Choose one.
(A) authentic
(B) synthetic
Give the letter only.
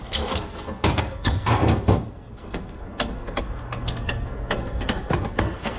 B